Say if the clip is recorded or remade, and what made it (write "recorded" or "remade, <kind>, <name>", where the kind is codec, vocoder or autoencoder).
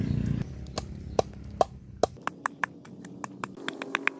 recorded